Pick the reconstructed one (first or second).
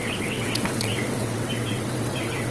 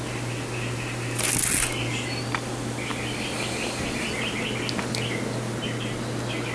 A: first